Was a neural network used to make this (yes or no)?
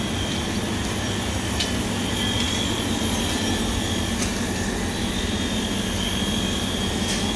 no